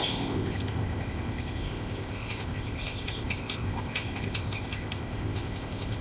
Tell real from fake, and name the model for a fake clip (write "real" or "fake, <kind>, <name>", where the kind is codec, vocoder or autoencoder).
fake, codec, ZipCodec